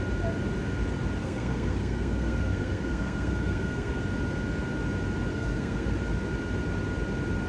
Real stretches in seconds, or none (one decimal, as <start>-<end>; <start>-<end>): 0.0-1.2; 4.0-5.3; 6.0-7.5